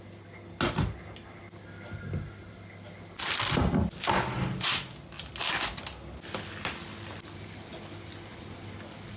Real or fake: real